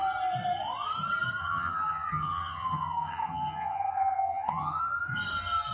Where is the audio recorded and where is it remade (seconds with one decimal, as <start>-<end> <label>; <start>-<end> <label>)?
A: 0.0-1.4 recorded; 1.4-4.8 remade; 4.8-5.7 recorded